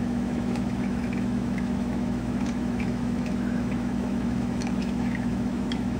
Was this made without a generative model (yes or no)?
no